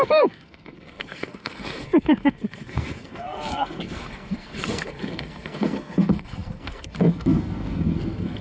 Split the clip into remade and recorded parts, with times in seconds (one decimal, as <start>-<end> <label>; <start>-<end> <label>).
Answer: 0.0-8.4 remade